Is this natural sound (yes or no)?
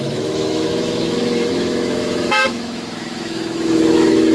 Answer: no